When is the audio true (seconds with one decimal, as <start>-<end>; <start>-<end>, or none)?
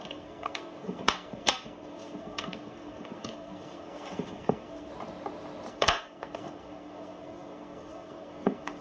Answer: 4.9-5.7